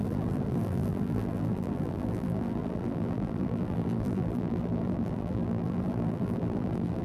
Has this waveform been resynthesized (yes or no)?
yes